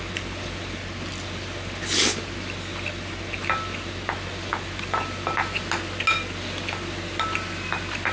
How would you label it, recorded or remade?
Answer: recorded